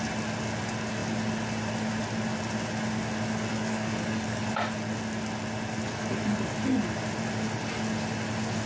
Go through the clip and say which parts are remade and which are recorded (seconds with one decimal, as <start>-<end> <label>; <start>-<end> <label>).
0.0-3.5 recorded; 3.5-4.4 remade; 4.4-8.7 recorded